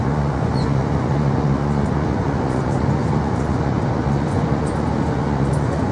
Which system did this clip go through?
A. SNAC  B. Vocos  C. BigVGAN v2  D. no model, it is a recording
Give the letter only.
B